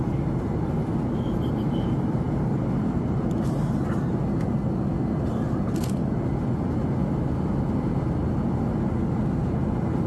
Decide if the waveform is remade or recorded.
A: recorded